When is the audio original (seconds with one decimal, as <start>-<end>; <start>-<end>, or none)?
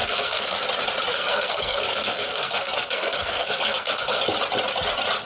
0.6-1.1; 4.2-5.2